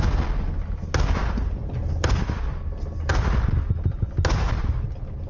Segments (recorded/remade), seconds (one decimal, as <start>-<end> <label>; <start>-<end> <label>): 0.0-5.3 recorded

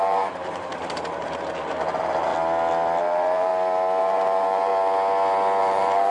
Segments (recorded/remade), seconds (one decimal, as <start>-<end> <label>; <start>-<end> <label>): 0.0-2.3 remade; 2.3-3.0 recorded; 3.0-3.5 remade; 3.5-4.0 recorded; 4.0-4.7 remade; 4.7-5.6 recorded; 5.6-6.1 remade

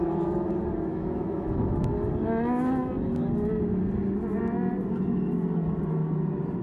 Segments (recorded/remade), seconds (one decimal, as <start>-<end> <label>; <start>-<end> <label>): 0.0-0.9 recorded; 0.9-1.9 remade; 1.9-6.6 recorded

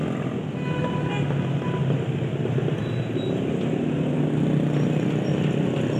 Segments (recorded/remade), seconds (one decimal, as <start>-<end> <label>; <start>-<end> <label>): 0.0-6.0 recorded

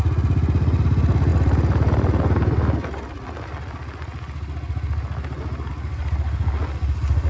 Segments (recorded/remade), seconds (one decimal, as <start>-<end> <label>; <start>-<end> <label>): 0.0-7.3 recorded

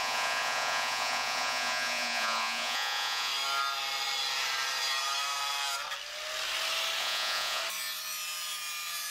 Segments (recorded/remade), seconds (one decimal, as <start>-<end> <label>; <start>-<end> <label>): 0.0-3.3 remade; 3.3-7.0 recorded; 7.0-7.6 remade; 7.6-9.1 recorded

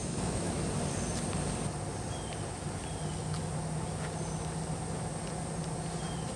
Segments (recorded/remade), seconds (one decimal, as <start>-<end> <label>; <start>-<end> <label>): 0.0-0.6 remade; 0.6-6.4 recorded

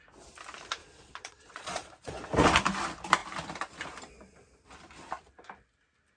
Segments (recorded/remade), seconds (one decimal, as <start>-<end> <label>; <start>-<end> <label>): 0.0-0.8 recorded; 0.8-2.2 remade; 2.2-6.2 recorded